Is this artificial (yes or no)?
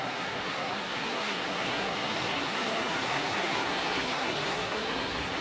yes